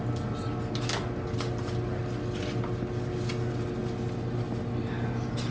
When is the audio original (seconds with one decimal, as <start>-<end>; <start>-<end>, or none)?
0.0-5.5